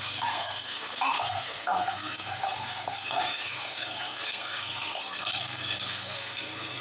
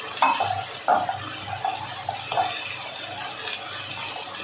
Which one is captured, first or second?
second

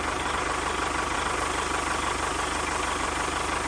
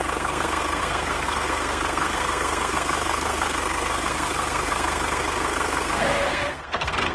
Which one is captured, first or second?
first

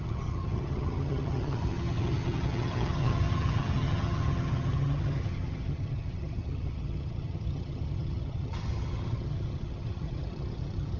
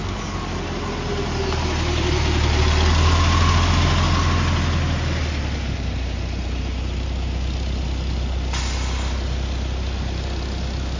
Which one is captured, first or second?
second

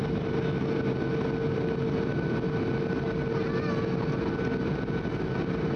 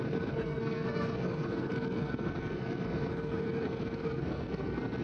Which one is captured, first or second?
first